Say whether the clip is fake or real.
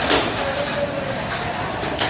real